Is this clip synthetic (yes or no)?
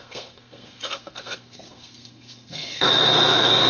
yes